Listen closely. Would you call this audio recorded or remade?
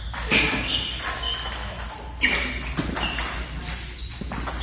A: recorded